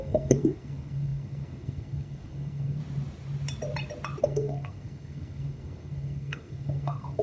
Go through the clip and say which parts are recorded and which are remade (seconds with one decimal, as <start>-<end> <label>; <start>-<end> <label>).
0.0-2.8 remade; 2.8-4.2 recorded; 4.2-7.2 remade